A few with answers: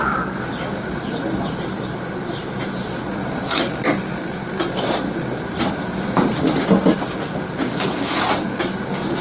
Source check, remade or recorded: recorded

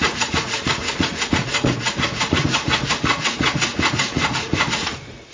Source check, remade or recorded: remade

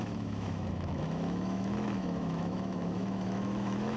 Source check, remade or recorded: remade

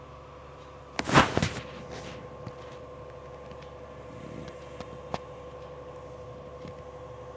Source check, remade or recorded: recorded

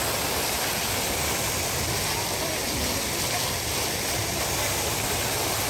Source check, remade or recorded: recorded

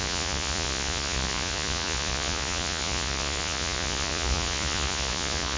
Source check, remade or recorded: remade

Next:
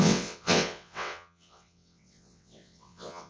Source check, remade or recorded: remade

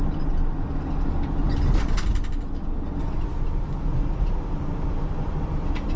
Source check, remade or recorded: recorded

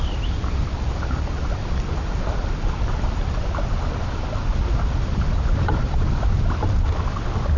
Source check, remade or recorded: recorded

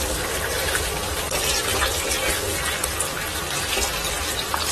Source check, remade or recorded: recorded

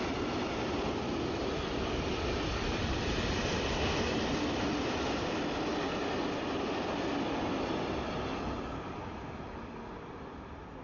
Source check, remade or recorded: recorded